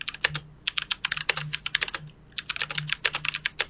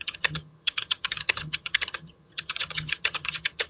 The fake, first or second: second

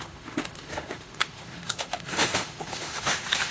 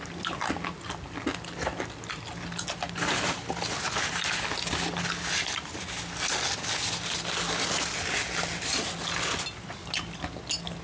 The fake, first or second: first